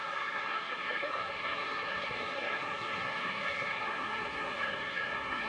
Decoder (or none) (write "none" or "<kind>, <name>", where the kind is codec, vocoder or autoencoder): codec, SNAC